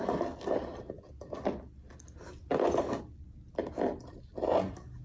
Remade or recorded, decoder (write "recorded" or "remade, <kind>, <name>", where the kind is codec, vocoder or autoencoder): recorded